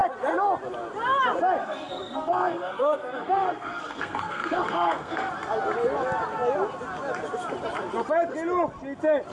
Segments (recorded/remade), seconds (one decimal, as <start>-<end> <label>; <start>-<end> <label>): 0.0-1.6 recorded; 1.6-5.3 remade; 5.3-9.3 recorded